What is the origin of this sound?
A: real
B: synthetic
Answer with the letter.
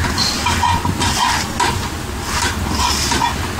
A